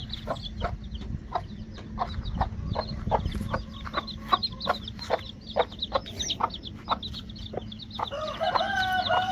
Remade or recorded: recorded